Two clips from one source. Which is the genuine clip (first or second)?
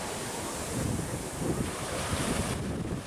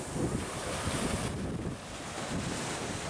second